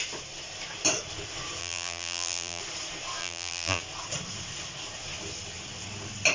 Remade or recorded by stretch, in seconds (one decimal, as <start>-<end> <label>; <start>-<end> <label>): 0.0-1.6 recorded; 1.6-2.6 remade; 2.6-3.2 recorded; 3.2-3.8 remade; 3.8-6.3 recorded